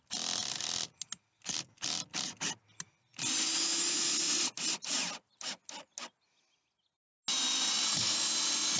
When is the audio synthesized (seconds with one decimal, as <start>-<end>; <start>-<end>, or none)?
none